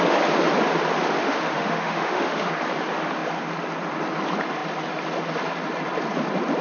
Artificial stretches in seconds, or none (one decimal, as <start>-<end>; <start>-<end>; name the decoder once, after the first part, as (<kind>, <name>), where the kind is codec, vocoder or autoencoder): 1.2-2.5 (autoencoder, DAC-VAE)